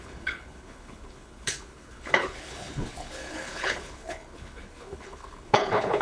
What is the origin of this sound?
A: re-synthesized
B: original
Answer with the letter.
A